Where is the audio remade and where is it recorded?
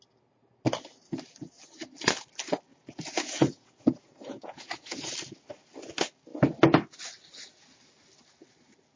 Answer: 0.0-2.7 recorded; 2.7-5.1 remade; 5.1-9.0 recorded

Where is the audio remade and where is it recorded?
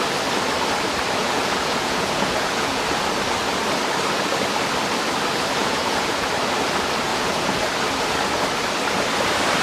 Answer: 0.0-1.2 recorded; 1.2-2.8 remade; 2.8-5.6 recorded; 5.6-6.3 remade; 6.3-7.1 recorded; 7.1-7.7 remade; 7.7-9.6 recorded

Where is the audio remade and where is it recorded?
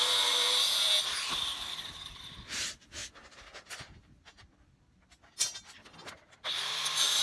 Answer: 0.0-7.2 recorded